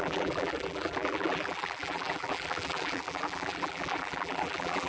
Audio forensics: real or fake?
fake